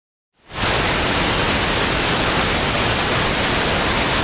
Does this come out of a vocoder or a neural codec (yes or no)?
no